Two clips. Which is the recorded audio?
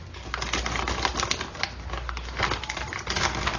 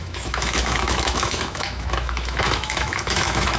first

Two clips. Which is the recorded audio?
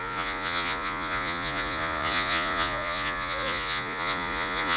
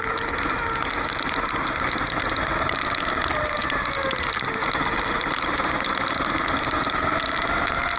second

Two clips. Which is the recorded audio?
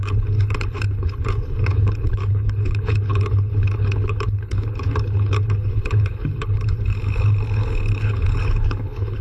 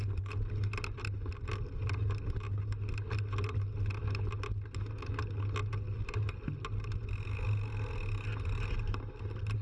second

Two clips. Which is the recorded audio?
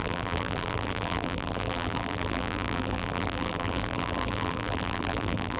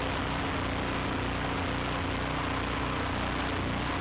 second